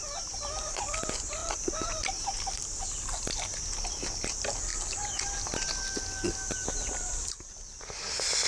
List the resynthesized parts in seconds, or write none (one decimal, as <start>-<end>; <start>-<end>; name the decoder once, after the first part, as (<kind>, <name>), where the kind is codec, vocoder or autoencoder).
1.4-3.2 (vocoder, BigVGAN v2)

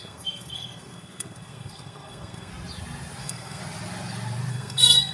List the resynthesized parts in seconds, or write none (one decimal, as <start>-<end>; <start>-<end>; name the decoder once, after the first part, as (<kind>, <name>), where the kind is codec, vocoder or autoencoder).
0.0-2.5 (codec, SNAC); 3.2-3.6; 4.5-5.1

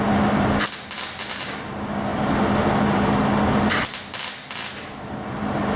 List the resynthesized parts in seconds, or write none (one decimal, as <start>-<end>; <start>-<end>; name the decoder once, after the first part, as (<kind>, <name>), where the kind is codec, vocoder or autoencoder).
2.1-4.0 (vocoder, BigVGAN v2)

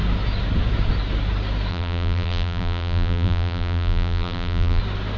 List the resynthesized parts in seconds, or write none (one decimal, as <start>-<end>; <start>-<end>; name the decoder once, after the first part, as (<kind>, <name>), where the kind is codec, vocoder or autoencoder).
1.7-4.8 (vocoder, BigVGAN v2)

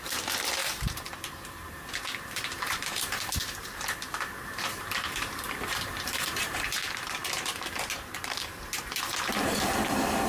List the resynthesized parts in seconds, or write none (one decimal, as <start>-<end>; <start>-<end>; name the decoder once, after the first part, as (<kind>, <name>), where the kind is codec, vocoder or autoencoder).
0.0-10.3 (vocoder, BigVGAN v2)